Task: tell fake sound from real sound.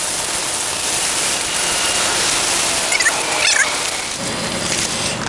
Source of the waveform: real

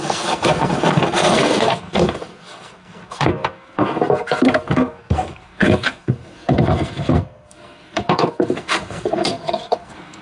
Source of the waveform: fake